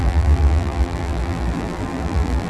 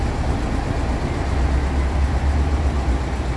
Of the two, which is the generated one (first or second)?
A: first